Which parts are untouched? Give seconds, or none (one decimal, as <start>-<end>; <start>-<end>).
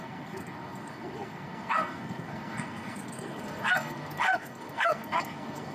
none